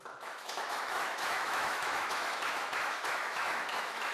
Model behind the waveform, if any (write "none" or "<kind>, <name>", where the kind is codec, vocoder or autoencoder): autoencoder, DAC-VAE